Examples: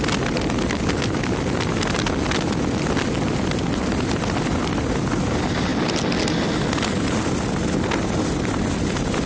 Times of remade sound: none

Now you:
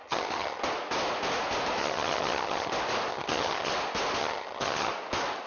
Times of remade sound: 0.0-0.6 (vocoder, HiFi-GAN); 1.8-2.7; 3.1-3.7; 4.2-4.9

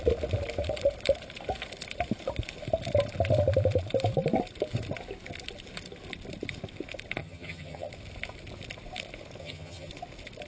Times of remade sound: 7.2-7.9 (vocoder, HiFi-GAN); 9.4-9.9